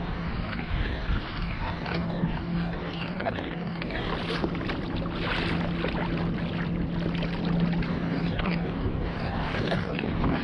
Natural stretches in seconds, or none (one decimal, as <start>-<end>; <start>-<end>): 4.1-7.9